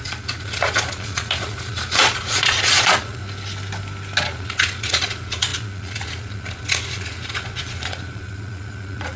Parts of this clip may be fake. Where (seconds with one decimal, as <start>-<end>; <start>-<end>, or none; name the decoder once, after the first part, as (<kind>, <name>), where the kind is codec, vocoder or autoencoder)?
0.0-3.2 (vocoder, Vocos); 4.2-9.2